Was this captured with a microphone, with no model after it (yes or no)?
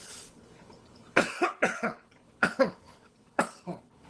no